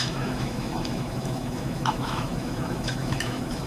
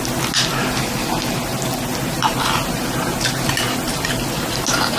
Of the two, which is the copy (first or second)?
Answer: first